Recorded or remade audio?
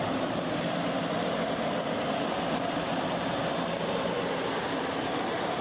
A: remade